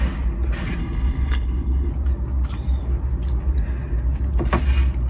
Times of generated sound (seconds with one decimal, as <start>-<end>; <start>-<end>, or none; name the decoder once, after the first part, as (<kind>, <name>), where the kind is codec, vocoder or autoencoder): 0.8-1.9 (codec, HILCodec)